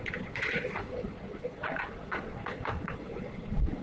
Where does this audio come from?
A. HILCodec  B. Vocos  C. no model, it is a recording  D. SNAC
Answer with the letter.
B